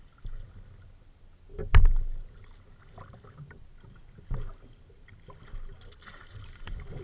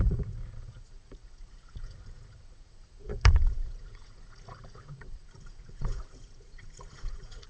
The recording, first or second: first